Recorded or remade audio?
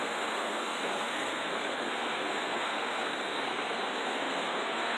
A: remade